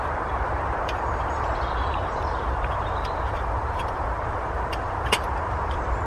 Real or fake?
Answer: fake